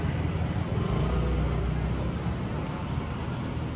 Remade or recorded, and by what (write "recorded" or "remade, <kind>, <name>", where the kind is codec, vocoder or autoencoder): recorded